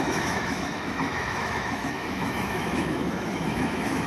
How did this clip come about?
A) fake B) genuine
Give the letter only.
A